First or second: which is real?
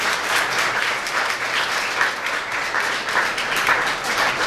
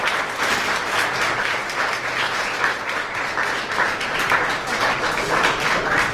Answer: second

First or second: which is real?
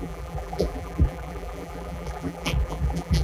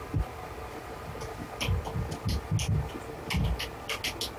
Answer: second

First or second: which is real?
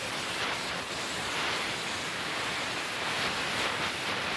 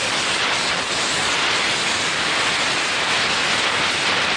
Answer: second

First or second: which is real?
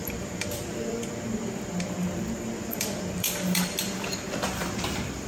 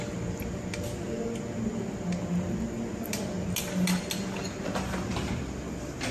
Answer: second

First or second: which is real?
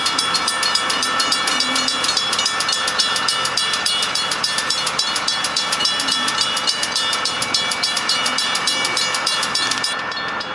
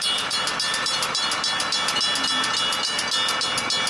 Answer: second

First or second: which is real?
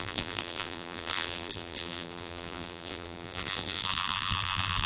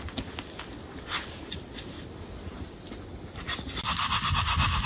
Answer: second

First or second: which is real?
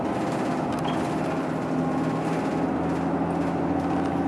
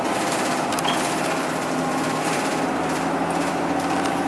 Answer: first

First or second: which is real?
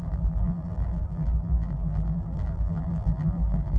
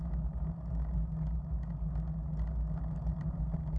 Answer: second